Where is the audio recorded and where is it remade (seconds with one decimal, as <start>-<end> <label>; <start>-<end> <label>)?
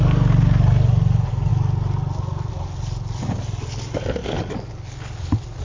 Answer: 0.0-5.6 recorded